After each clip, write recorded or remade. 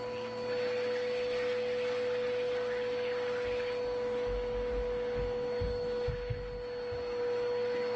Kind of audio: recorded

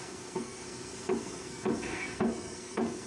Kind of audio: remade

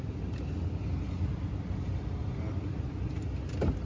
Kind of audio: recorded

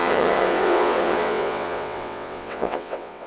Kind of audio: remade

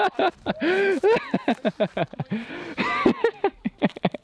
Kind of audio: recorded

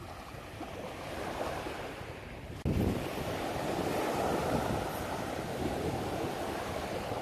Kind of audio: recorded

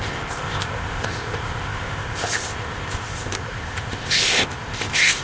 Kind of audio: remade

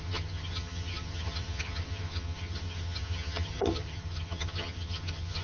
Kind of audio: remade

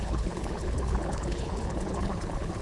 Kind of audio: remade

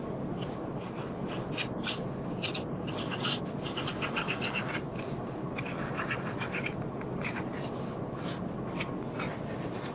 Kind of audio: recorded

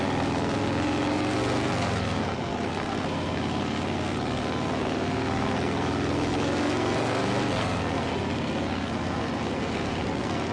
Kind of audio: remade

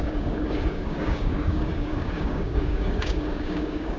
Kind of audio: remade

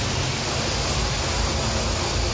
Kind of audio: recorded